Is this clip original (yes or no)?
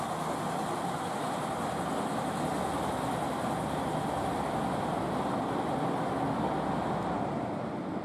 yes